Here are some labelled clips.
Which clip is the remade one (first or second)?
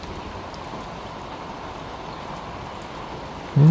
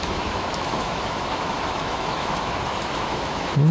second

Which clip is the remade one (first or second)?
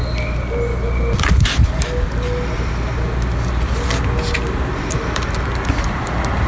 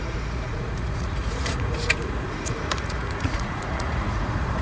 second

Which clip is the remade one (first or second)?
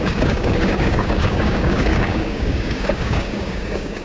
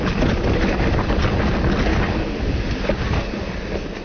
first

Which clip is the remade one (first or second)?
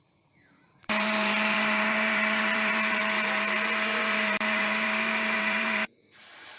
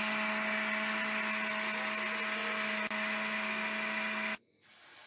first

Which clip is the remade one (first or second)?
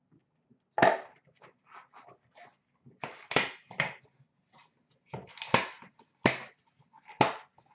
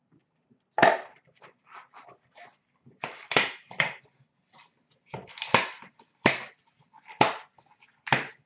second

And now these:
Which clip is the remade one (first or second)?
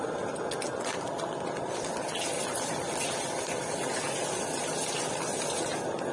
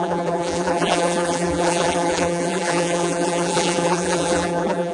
second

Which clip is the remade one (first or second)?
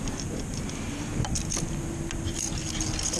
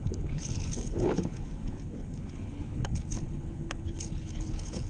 second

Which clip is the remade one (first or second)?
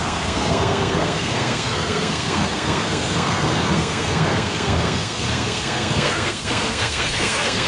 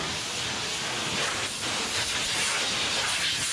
first